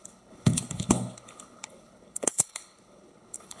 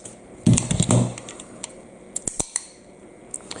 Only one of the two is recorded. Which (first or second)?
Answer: second